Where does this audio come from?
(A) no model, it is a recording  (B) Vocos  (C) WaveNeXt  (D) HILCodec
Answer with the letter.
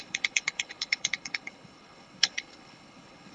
D